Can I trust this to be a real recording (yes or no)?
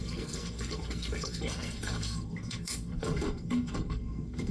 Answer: no